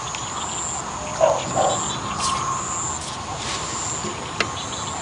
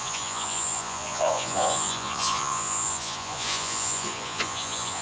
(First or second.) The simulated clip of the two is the second